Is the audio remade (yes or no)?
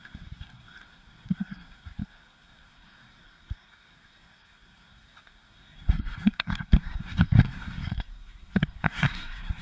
yes